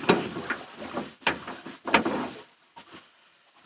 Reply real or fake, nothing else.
fake